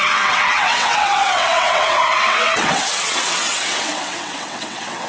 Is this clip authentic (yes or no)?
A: no